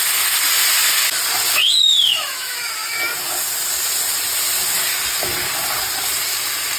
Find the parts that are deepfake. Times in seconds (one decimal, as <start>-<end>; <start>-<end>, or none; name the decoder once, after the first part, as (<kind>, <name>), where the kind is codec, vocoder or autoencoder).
2.1-3.0 (autoencoder, DAC-VAE)